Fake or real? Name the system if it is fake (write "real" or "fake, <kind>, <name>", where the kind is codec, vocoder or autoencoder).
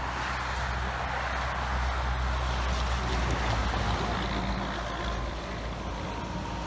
real